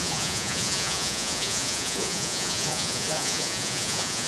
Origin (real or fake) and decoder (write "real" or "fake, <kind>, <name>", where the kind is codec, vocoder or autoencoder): fake, vocoder, Vocos